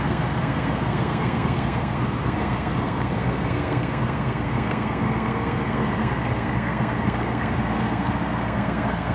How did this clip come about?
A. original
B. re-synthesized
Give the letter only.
B